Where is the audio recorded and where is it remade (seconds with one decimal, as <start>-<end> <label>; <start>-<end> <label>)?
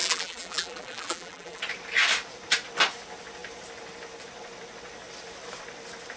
0.0-1.6 remade; 1.6-6.2 recorded